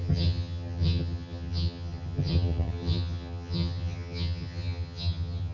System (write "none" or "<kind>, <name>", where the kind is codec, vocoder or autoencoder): vocoder, HiFi-GAN